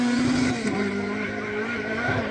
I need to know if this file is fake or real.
fake